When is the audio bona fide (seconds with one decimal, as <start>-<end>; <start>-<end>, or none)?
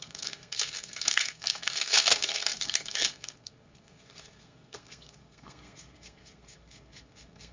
none